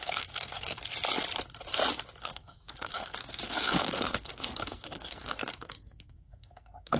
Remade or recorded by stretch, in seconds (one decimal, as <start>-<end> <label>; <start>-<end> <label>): 0.0-0.8 remade; 0.8-2.2 recorded; 2.2-7.0 remade